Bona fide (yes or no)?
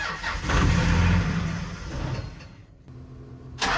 yes